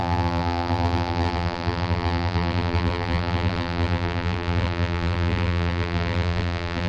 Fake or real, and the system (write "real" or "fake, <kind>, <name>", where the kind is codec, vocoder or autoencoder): fake, vocoder, BigVGAN v2